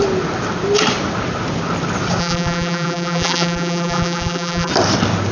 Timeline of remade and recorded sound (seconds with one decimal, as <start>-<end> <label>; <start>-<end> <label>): 0.0-2.2 recorded; 2.2-4.7 remade; 4.7-5.3 recorded